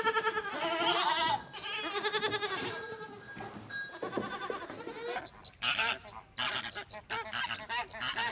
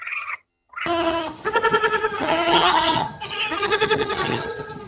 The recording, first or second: first